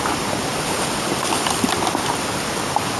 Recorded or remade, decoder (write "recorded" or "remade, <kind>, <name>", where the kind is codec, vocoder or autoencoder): recorded